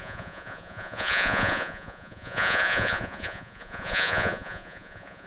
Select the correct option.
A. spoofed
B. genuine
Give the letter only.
A